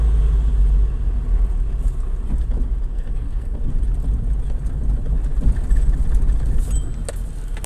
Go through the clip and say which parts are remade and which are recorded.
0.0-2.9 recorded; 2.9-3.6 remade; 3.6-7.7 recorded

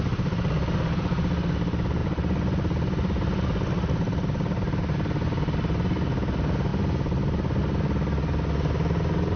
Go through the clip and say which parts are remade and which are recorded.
0.0-9.4 recorded

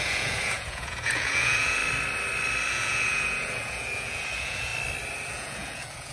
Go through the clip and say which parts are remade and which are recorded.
0.0-1.8 remade; 1.8-2.7 recorded; 2.7-4.7 remade; 4.7-5.3 recorded; 5.3-6.1 remade